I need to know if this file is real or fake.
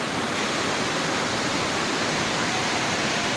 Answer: real